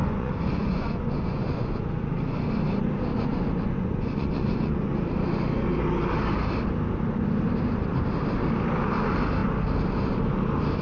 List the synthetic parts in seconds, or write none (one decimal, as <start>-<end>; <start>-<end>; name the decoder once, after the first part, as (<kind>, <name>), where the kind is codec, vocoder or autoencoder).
0.0-2.1 (vocoder, Vocos); 3.1-5.0